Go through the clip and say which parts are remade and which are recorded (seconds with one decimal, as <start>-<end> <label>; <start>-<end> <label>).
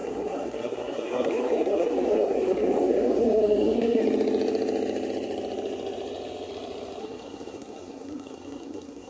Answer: 0.0-4.0 remade; 4.0-7.0 recorded; 7.0-9.1 remade